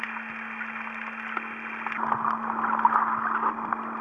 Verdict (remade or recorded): recorded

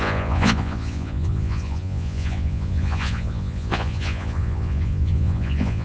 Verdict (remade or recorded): remade